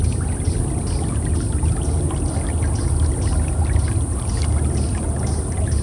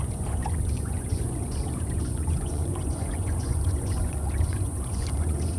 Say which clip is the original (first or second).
first